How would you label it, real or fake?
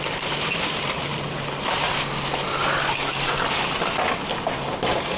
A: real